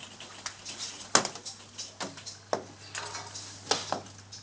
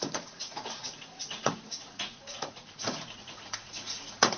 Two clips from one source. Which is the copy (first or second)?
second